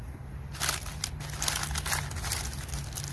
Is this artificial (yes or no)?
no